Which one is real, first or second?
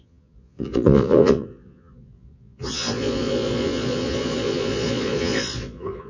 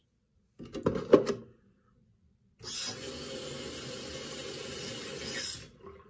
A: second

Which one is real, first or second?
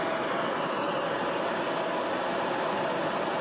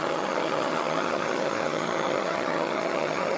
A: first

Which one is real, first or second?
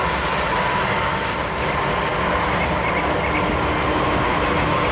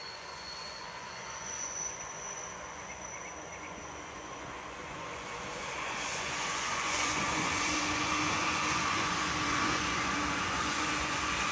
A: first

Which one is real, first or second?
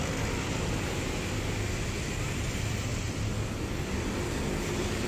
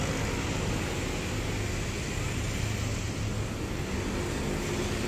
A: second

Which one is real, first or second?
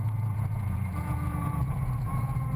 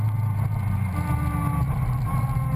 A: second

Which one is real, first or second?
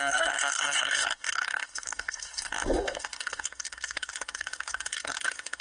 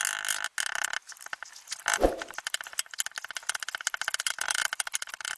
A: second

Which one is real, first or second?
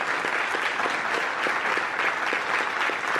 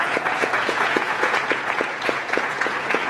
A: first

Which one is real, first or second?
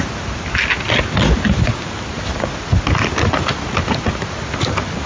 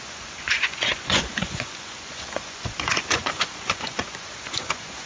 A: first